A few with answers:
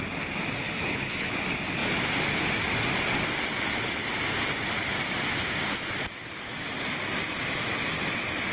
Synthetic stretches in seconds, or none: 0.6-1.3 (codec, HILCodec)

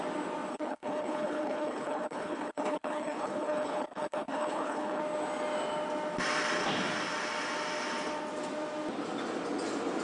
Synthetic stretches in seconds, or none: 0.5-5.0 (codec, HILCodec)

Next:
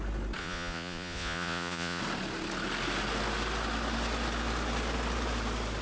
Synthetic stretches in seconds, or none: 0.4-2.0 (vocoder, Vocos)